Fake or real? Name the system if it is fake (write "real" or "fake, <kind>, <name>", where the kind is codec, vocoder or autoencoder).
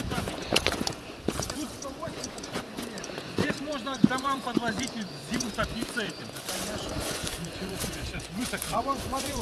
fake, vocoder, Vocos